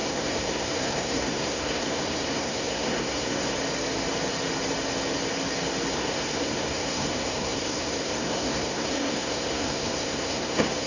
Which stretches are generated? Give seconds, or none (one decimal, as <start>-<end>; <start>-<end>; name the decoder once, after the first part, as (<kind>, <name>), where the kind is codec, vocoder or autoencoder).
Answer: 0.0-3.5 (codec, SNAC); 5.9-10.9